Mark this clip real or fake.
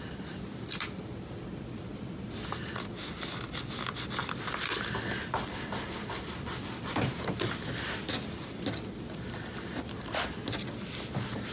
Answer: real